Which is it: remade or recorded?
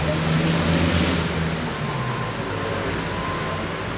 recorded